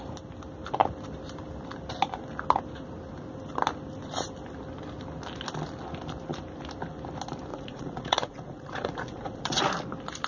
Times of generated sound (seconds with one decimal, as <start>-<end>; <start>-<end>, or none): 7.5-9.6